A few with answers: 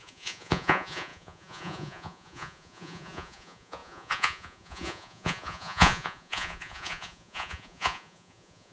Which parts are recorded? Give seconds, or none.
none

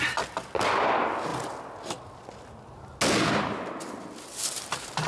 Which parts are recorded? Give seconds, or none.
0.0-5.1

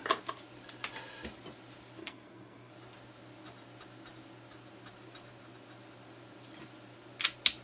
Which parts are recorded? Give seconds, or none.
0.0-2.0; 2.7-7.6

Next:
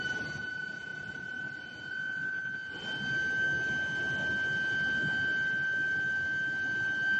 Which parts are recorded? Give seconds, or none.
0.0-7.2